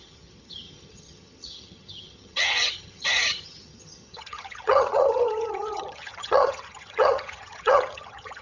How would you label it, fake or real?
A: fake